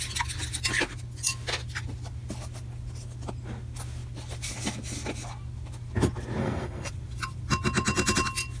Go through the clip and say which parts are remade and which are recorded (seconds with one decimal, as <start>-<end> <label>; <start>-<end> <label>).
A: 0.0-6.4 recorded; 6.4-6.9 remade; 6.9-8.6 recorded